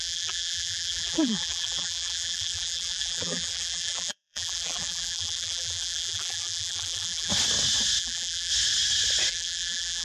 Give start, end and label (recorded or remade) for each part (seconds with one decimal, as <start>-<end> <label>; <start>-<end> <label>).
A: 0.0-7.3 remade; 7.3-8.0 recorded; 8.0-8.5 remade; 8.5-9.3 recorded; 9.3-10.0 remade